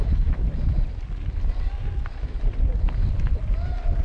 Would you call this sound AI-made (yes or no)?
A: yes